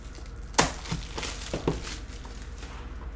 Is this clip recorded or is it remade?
recorded